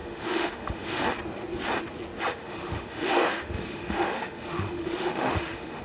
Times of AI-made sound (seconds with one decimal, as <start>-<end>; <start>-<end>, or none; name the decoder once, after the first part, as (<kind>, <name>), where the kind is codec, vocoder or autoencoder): 0.0-1.0 (autoencoder, DAC-VAE); 2.3-5.8